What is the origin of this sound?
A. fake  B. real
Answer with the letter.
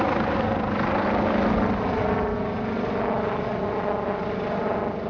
B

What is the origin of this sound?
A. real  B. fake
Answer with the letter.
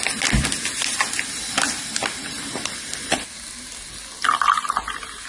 A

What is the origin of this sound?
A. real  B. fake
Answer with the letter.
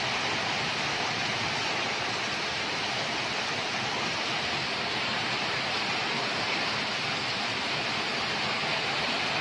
A